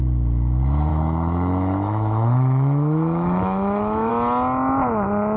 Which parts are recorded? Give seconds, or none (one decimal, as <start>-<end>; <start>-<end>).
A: 0.0-0.9; 4.1-5.4